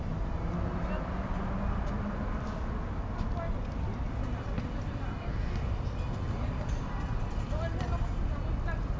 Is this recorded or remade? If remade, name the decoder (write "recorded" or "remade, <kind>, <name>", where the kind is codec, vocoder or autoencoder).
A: recorded